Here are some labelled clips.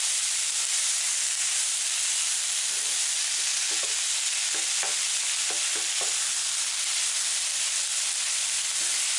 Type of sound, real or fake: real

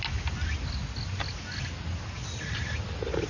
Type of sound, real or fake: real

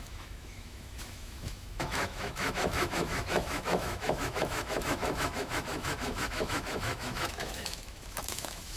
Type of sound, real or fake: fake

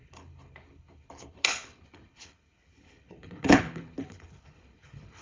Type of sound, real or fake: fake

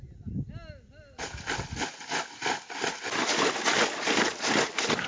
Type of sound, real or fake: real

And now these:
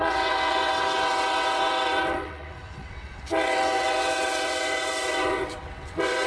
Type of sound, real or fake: fake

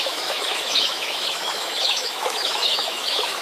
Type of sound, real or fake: fake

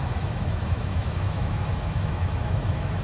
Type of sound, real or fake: fake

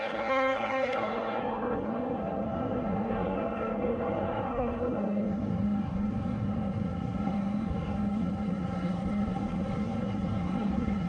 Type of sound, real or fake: fake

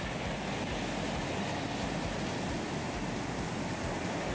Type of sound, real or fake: real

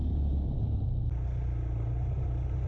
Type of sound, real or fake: real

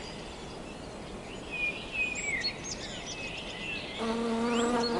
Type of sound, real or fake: real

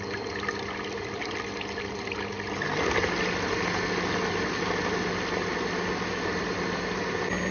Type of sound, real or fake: real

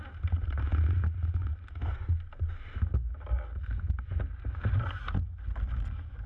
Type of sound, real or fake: real